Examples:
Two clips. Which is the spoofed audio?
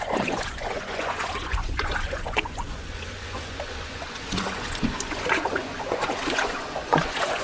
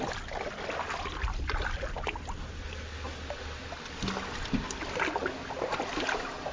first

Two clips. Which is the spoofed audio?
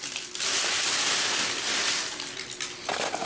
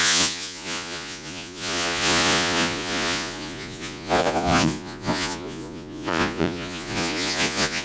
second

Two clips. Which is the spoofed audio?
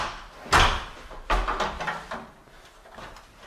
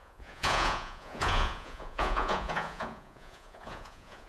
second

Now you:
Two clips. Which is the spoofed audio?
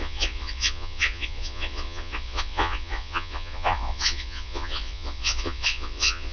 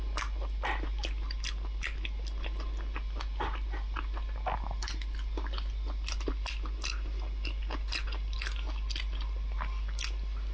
first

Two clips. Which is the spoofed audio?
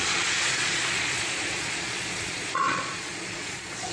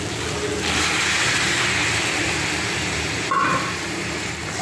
first